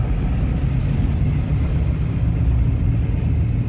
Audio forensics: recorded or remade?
recorded